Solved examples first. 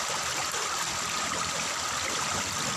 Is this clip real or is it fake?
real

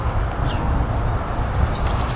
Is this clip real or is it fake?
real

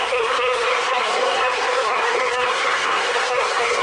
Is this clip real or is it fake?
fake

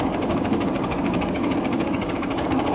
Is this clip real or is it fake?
fake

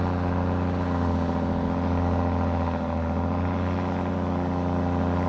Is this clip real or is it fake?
real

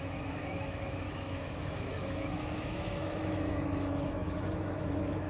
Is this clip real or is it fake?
fake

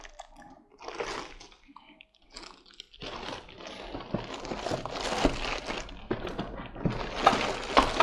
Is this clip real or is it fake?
real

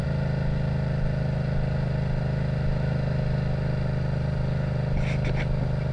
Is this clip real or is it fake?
real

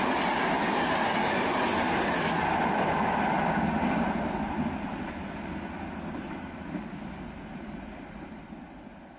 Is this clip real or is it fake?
real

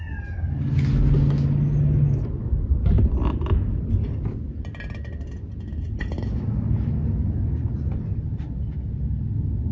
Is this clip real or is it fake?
real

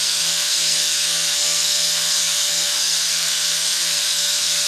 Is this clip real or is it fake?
fake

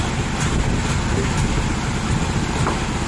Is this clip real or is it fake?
real